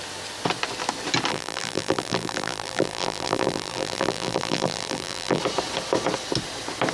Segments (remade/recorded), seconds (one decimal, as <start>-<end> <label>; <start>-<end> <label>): 0.0-1.3 recorded; 1.3-5.4 remade; 5.4-6.9 recorded